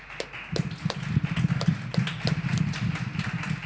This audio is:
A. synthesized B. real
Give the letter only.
B